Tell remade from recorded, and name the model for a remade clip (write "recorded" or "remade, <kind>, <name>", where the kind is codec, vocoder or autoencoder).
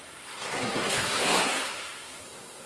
remade, codec, SNAC